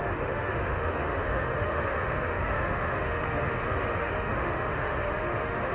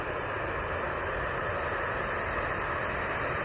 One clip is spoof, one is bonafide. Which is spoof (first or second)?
first